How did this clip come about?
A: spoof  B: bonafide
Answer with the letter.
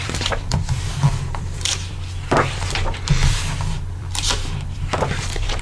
A